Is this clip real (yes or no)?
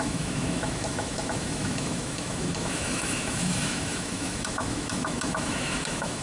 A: no